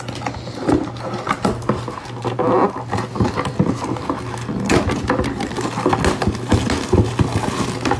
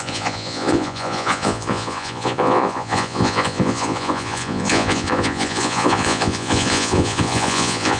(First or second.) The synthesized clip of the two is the second